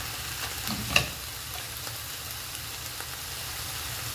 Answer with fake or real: real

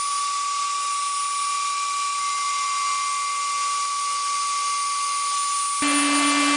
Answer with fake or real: real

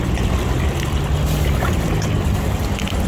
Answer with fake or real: real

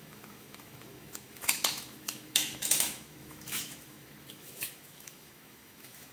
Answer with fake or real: fake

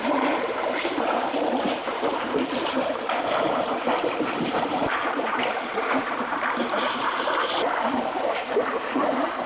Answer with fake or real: fake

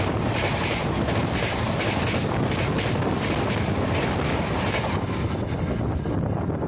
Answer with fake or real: real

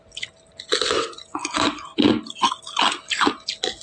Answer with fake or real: real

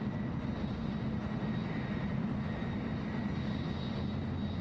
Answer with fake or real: real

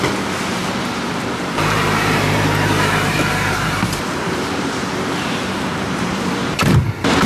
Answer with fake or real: fake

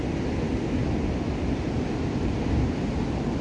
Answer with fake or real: real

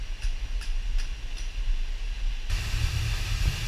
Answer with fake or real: real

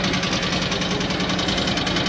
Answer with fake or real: real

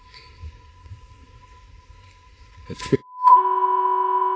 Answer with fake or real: fake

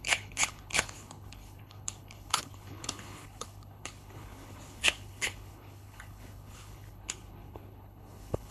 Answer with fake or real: fake